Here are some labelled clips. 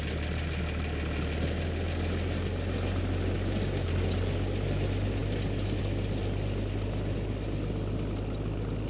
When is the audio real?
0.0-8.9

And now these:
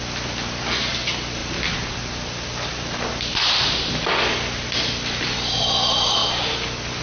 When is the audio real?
0.0-7.0

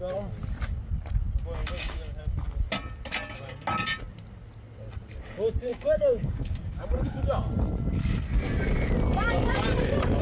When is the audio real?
0.0-1.6; 2.2-5.7; 7.2-10.2

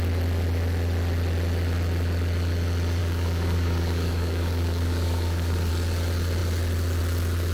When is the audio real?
0.0-3.0; 5.7-7.5